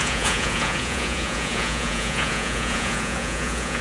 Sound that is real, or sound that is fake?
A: fake